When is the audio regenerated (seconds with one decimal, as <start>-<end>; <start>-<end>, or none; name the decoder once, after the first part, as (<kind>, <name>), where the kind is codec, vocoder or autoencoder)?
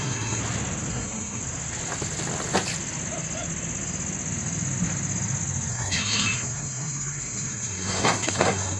0.0-0.4 (codec, SNAC); 0.9-1.4; 5.7-8.8